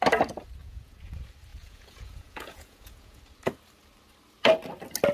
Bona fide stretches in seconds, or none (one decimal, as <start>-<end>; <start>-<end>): 0.0-0.6; 1.1-1.5; 3.2-5.1

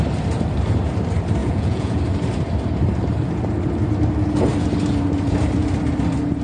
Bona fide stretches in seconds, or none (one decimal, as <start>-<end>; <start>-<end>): 0.0-1.4; 2.0-6.4

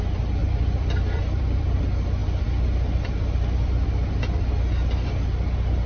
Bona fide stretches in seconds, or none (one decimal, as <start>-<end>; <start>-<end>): 0.0-0.4; 1.8-2.2; 4.5-5.9

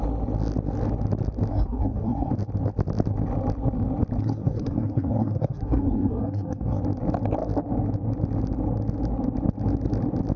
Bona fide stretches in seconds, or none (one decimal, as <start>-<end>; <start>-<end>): 0.0-1.5; 2.3-4.2; 6.8-10.4

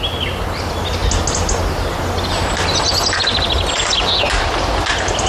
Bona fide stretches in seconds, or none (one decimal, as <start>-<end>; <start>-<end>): 0.0-5.3

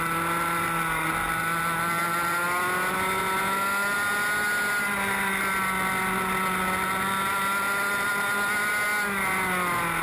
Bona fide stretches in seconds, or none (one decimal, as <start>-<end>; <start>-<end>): 0.0-10.0